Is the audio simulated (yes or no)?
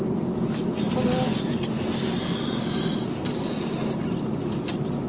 no